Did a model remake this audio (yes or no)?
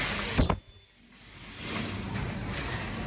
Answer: no